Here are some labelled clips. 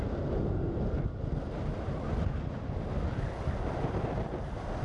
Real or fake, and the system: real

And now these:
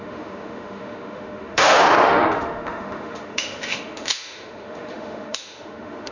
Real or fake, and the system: fake, autoencoder, DAC-VAE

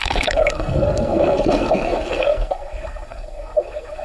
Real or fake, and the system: fake, codec, SNAC